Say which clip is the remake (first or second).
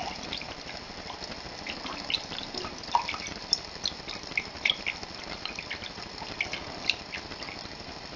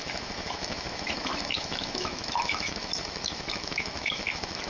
second